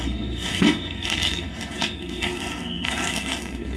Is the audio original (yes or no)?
no